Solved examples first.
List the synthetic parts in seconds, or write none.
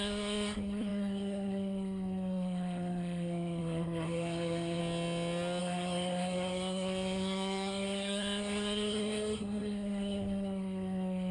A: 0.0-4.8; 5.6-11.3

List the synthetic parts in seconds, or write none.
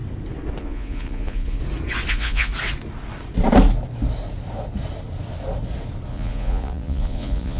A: 0.6-1.6; 2.1-2.5; 6.1-7.6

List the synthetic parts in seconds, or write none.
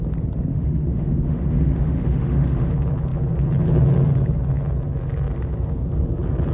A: 0.5-2.7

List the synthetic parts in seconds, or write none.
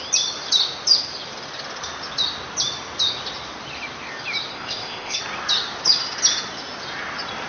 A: 4.5-5.2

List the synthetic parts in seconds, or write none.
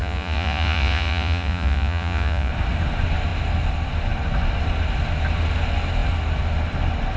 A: 0.0-2.5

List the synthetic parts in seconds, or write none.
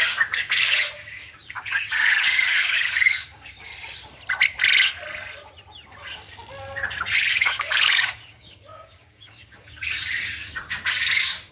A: 0.0-3.7; 7.3-11.5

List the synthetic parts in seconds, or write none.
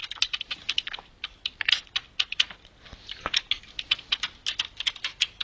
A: none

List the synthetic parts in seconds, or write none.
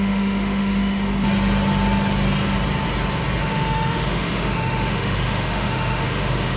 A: 0.0-1.1; 3.4-6.6